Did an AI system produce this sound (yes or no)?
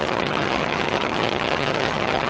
yes